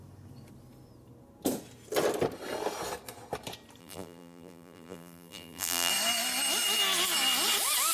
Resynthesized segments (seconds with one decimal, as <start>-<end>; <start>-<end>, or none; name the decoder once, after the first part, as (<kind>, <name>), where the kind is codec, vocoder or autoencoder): 3.8-5.9 (vocoder, BigVGAN v2)